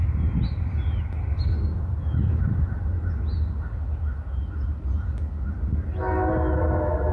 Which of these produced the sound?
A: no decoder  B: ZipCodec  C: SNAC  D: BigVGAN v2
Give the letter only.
A